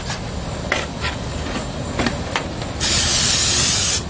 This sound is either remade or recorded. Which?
recorded